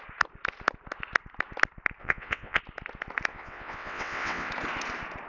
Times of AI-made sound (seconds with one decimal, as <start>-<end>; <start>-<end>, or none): 2.0-2.6; 3.3-4.5